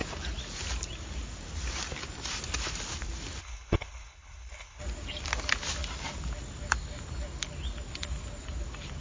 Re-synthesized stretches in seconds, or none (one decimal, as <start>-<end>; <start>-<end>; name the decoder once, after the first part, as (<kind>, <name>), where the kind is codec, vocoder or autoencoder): 3.4-4.8 (codec, HILCodec)